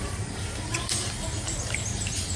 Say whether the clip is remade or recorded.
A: remade